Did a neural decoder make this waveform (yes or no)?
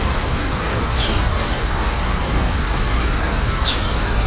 yes